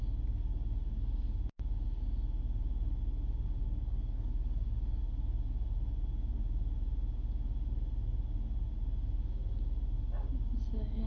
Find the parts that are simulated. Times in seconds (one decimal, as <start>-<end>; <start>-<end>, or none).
3.6-5.0